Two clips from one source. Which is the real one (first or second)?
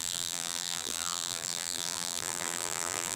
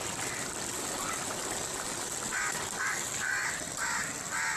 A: second